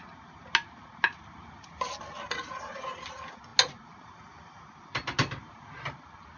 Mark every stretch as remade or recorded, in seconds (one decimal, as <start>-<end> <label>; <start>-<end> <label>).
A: 0.0-6.4 recorded